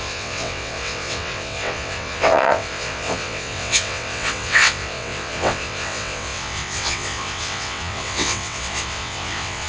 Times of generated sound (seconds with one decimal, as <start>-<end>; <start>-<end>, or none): 0.0-9.7